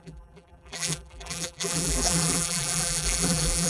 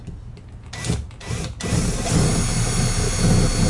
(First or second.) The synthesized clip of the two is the first